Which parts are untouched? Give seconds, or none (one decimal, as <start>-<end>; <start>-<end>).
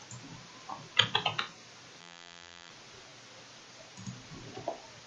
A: 0.0-2.0; 2.7-5.1